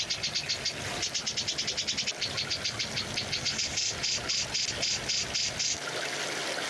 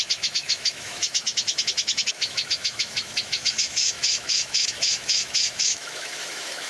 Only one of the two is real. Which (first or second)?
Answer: first